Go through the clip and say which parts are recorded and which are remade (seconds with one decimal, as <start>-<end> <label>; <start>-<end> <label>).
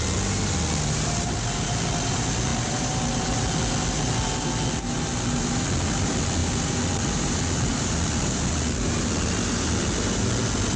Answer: 0.0-2.5 recorded; 2.5-3.0 remade; 3.0-6.4 recorded; 6.4-7.7 remade; 7.7-10.8 recorded